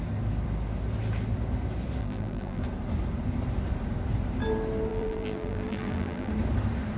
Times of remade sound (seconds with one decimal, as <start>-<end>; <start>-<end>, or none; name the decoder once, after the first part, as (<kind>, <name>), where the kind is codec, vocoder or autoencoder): 2.0-2.6 (vocoder, BigVGAN v2); 4.9-6.3